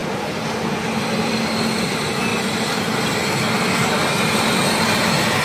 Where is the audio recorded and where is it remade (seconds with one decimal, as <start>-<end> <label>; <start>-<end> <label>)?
0.0-2.3 recorded; 2.3-2.8 remade; 2.8-5.4 recorded